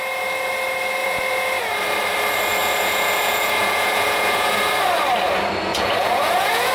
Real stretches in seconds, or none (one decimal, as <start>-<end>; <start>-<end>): 0.0-1.0; 1.6-2.6; 4.7-5.7